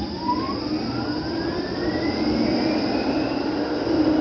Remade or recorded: recorded